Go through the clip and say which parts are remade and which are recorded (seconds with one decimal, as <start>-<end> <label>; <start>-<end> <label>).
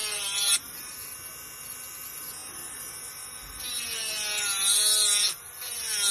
0.0-6.1 recorded